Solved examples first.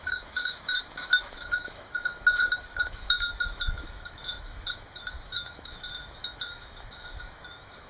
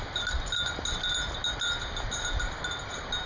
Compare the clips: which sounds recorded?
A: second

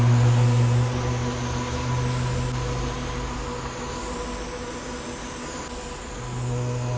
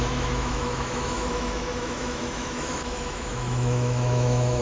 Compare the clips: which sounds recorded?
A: first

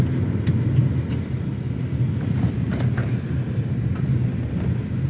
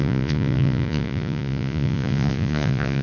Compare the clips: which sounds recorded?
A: first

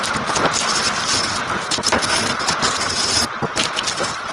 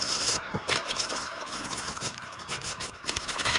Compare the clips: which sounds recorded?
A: first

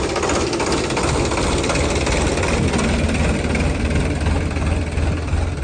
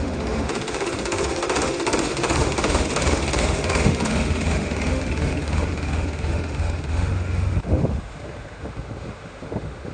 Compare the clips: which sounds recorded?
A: first